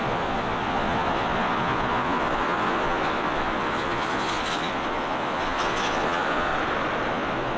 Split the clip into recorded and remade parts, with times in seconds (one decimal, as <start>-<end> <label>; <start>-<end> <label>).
0.0-6.5 remade; 6.5-7.1 recorded; 7.1-7.6 remade